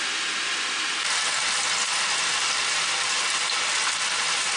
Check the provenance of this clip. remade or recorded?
recorded